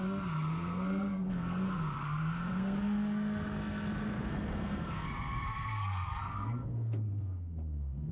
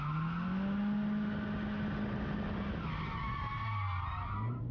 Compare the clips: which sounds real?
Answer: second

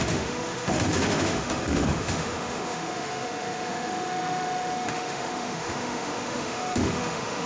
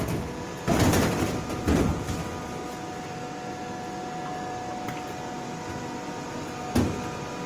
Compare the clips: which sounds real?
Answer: second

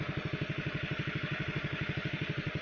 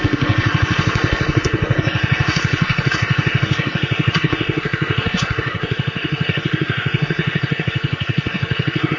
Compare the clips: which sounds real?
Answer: first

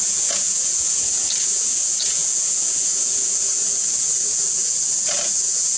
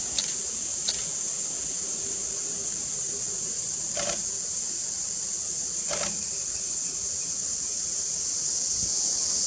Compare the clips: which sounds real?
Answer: second